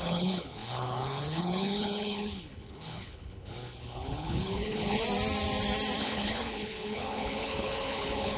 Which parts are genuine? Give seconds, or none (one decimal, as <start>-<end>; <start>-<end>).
5.0-6.0